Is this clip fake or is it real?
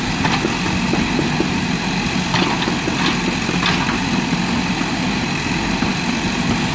real